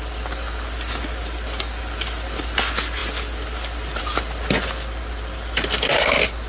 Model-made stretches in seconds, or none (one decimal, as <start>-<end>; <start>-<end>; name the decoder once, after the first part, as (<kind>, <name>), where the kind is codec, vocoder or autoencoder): none